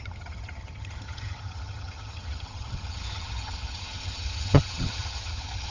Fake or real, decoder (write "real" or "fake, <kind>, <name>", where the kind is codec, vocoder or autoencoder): fake, vocoder, HiFi-GAN